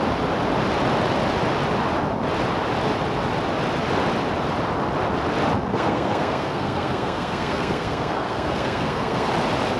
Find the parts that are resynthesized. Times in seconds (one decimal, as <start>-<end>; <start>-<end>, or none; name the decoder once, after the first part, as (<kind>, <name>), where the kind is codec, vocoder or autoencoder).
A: 5.7-9.3 (codec, SNAC)